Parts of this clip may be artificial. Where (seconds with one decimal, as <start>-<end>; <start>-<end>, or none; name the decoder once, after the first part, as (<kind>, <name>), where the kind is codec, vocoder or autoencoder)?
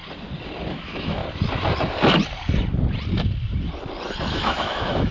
0.7-1.2 (autoencoder, DAC-VAE); 4.3-5.1